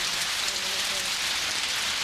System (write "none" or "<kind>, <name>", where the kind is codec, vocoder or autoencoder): vocoder, BigVGAN v2